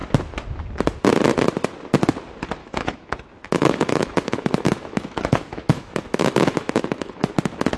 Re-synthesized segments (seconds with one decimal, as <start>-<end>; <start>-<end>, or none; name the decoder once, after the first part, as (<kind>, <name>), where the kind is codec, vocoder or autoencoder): 2.6-7.3 (autoencoder, DAC-VAE)